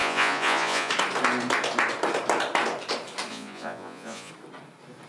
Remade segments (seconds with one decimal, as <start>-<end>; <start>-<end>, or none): 0.0-0.9; 3.3-4.3